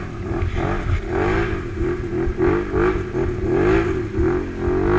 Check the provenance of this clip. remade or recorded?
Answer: recorded